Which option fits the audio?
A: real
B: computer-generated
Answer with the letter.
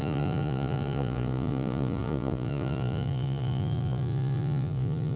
B